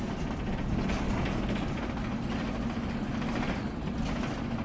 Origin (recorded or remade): recorded